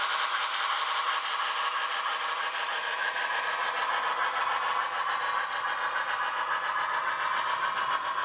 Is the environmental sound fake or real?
fake